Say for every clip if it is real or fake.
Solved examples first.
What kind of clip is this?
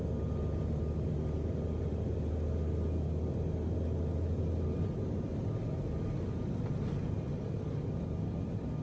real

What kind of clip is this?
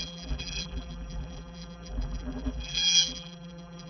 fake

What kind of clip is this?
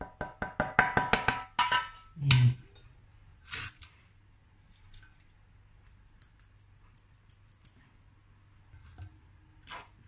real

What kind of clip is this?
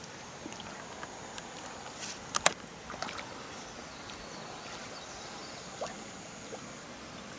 real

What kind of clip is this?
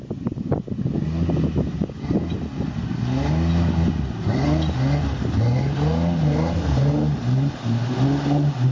real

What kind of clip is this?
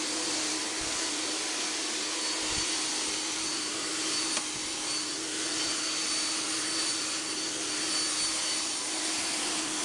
real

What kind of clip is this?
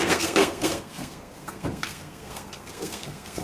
fake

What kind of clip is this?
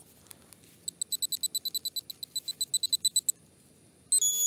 real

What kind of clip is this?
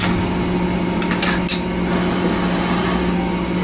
real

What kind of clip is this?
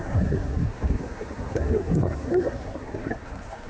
fake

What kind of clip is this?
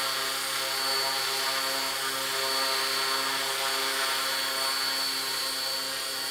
real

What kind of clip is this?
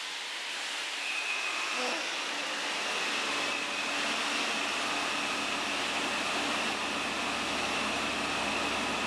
real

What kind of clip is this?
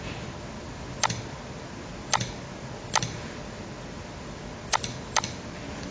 real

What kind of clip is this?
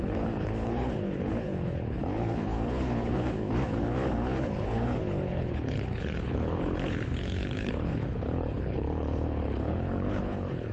fake